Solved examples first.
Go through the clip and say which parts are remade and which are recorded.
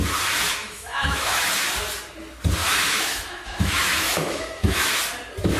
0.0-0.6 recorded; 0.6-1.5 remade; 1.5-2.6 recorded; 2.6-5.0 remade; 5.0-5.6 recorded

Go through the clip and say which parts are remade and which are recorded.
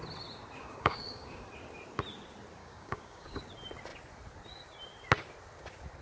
0.0-0.6 recorded; 0.6-1.5 remade; 1.5-2.6 recorded; 2.6-3.4 remade; 3.4-6.0 recorded